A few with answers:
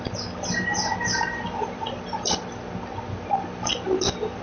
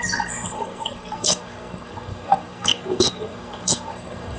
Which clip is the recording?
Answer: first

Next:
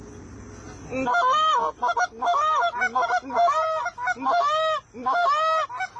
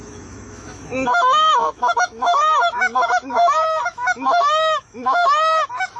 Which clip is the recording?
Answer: first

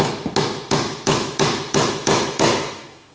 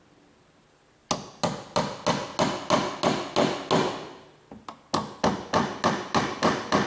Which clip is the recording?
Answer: second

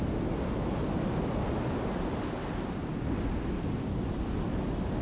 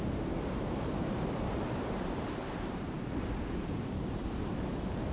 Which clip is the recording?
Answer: first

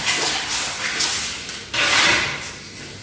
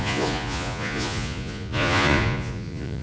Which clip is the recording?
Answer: first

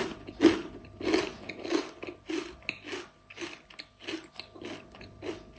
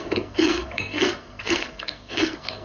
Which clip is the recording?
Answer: first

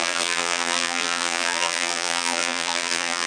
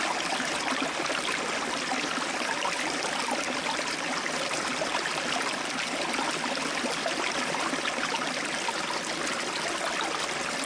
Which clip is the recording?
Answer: second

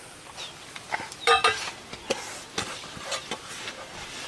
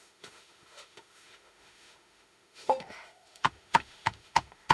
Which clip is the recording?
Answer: first